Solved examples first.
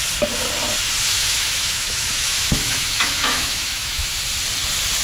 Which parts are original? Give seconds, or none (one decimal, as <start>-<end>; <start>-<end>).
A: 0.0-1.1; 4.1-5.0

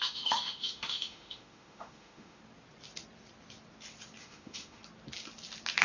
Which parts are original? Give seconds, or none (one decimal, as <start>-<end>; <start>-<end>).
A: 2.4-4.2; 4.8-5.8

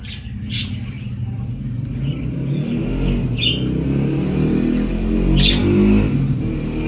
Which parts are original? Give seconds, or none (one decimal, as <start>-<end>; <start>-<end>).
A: 0.0-6.9

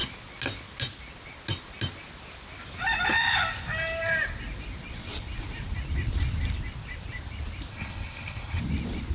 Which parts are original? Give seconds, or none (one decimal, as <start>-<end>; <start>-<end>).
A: 0.0-7.7; 8.6-9.1

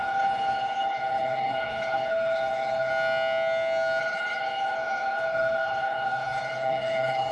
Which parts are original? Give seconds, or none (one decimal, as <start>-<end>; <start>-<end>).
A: 2.9-4.0

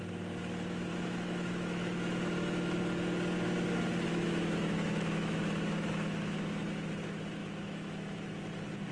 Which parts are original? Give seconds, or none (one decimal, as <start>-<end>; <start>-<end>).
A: 0.0-0.9; 2.8-4.1; 6.9-7.4; 8.4-8.9

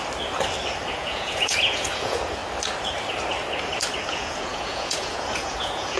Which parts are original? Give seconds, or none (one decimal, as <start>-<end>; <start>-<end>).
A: 0.0-0.9; 2.4-4.1